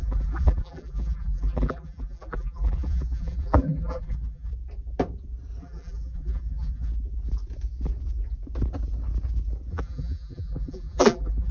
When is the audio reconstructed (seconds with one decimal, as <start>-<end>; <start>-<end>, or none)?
0.0-4.5; 5.6-6.9; 9.7-11.5